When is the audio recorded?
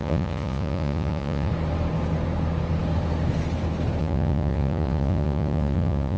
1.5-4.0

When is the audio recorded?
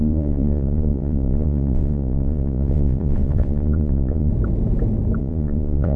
4.3-5.2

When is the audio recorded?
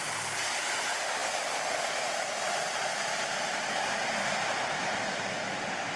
0.0-6.0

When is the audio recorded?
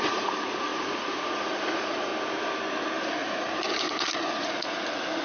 2.1-3.0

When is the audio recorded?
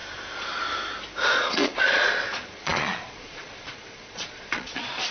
0.0-1.3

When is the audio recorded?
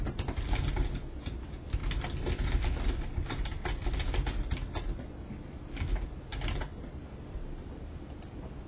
0.0-8.7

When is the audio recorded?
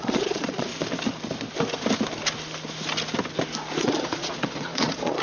0.7-3.8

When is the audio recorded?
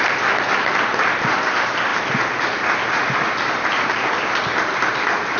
0.0-5.4